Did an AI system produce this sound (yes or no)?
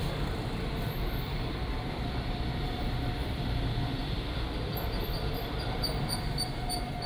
yes